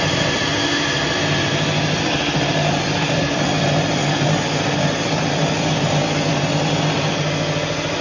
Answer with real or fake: real